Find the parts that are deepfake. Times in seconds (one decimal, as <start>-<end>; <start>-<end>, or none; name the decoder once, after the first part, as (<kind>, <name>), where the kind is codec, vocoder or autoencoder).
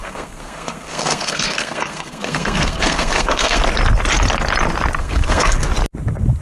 0.0-3.6 (codec, SNAC); 5.0-5.7